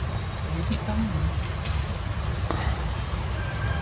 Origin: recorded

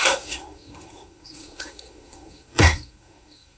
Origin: remade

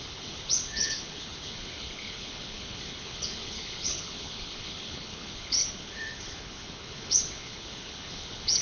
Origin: remade